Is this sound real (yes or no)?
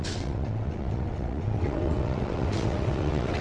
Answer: no